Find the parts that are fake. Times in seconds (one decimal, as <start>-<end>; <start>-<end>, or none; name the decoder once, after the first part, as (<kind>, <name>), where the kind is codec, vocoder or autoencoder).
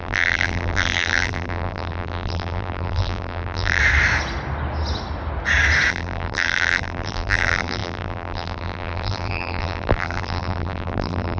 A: 0.0-3.8 (vocoder, BigVGAN v2); 5.9-11.4